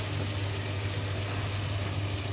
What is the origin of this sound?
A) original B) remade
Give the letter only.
A